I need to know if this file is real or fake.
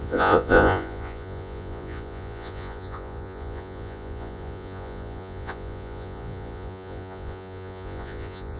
fake